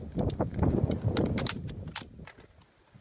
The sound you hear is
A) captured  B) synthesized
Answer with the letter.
A